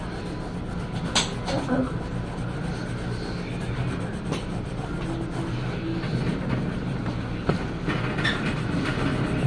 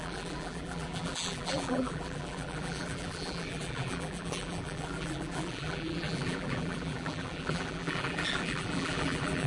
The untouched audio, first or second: first